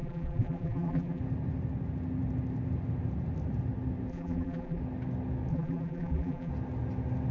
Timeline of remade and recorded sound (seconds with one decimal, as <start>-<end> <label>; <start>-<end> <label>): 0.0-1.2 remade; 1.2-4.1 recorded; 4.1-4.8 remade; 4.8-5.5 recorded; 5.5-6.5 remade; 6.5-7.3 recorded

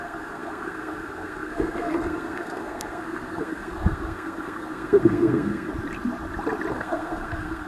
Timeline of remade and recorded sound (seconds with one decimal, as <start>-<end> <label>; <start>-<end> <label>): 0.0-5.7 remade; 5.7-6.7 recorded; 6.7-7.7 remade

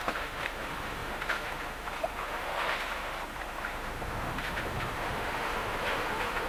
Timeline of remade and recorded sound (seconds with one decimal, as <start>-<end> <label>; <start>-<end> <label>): 0.0-6.5 remade

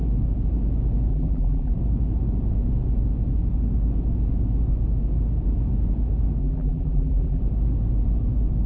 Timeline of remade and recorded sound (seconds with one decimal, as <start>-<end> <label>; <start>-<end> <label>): 0.0-1.1 recorded; 1.1-1.7 remade; 1.7-6.4 recorded; 6.4-7.4 remade; 7.4-8.7 recorded

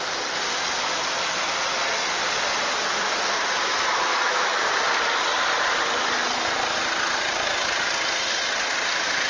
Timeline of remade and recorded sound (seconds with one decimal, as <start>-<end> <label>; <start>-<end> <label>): 0.0-4.1 recorded; 4.1-4.7 remade; 4.7-9.3 recorded

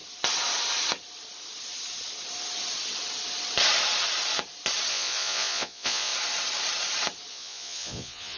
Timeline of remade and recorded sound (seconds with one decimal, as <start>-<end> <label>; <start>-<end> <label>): 0.0-4.9 recorded; 4.9-6.1 remade; 6.1-7.3 recorded; 7.3-8.4 remade

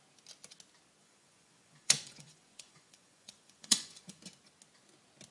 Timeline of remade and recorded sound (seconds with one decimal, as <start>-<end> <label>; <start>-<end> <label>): 0.0-1.0 recorded; 1.0-4.2 remade; 4.2-5.3 recorded

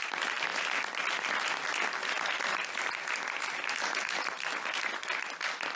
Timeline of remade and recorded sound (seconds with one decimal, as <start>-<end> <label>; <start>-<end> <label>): 0.0-5.8 recorded